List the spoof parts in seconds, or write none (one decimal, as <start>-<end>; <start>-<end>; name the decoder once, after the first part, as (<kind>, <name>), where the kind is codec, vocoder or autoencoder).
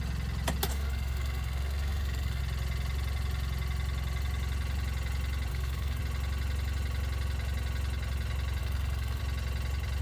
0.7-2.4 (codec, SNAC); 5.5-6.0; 8.6-9.2